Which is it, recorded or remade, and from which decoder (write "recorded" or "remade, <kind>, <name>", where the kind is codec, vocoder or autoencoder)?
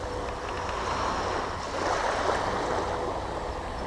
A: recorded